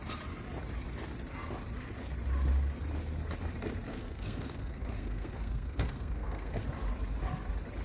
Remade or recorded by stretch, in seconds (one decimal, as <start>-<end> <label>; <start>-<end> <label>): 0.0-3.9 recorded; 3.9-6.6 remade; 6.6-7.8 recorded